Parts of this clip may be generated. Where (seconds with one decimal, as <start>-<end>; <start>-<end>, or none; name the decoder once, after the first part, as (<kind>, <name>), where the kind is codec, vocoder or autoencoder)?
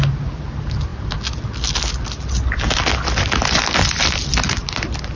none